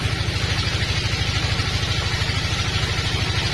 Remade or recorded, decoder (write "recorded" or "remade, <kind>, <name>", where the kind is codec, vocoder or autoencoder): recorded